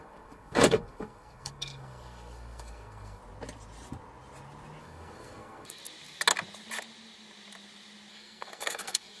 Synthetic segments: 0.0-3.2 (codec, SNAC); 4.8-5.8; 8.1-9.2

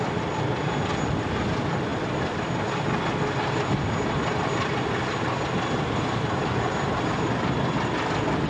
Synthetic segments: none

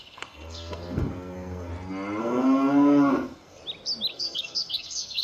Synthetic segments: 0.0-1.7 (codec, SNAC); 2.2-3.6; 4.1-5.2

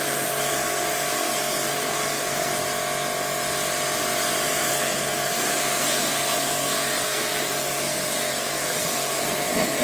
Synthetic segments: 0.0-2.5 (codec, SNAC); 4.7-9.8

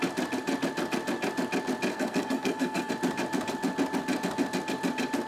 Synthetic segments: 1.9-2.9 (codec, SNAC)

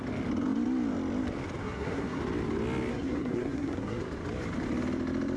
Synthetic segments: 1.6-2.2 (codec, SNAC); 2.9-4.0

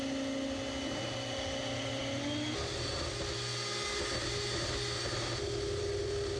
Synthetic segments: none